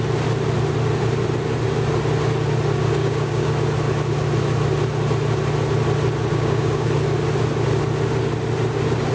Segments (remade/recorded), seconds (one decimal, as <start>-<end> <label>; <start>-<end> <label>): 0.0-3.0 recorded; 3.0-3.5 remade; 3.5-6.3 recorded; 6.3-6.9 remade; 6.9-9.1 recorded